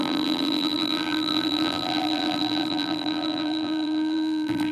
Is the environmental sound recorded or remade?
remade